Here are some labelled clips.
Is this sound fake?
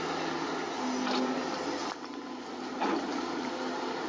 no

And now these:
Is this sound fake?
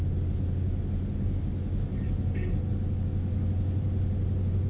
no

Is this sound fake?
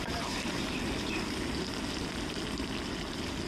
no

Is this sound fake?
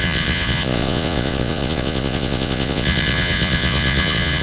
yes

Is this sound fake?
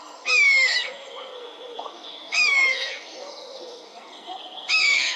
yes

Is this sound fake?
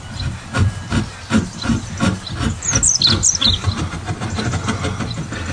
no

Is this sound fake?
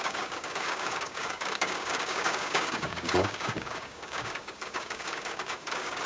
yes